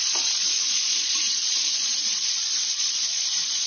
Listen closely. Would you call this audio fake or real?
fake